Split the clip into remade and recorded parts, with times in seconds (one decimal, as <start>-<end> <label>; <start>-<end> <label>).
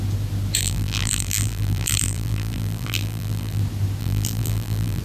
0.0-0.6 recorded; 0.6-3.6 remade; 3.6-4.0 recorded; 4.0-5.0 remade